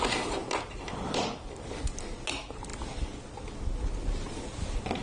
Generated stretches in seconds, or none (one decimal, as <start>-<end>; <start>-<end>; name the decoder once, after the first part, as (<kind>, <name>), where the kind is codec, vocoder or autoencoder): 0.4-1.8 (vocoder, BigVGAN v2); 2.7-3.3